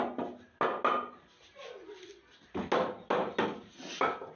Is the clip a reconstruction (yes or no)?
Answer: no